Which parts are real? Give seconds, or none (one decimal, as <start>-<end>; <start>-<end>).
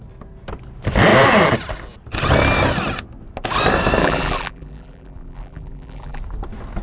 0.0-4.0; 6.2-6.8